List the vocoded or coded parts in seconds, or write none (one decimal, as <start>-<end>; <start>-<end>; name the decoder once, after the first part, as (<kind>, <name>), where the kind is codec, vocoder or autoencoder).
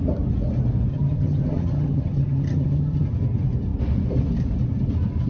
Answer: 0.9-3.1 (vocoder, HiFi-GAN)